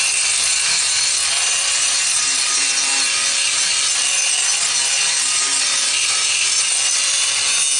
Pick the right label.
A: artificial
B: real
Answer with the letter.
B